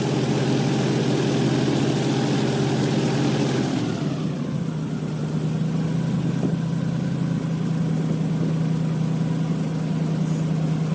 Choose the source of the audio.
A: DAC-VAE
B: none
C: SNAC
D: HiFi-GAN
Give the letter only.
B